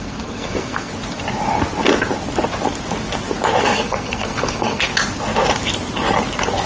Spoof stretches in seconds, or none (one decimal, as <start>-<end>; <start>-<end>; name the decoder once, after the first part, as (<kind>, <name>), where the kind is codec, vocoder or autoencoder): 0.0-0.9 (codec, SNAC); 3.6-4.9